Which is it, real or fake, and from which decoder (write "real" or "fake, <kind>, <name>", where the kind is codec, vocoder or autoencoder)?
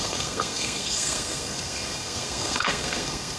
fake, codec, SNAC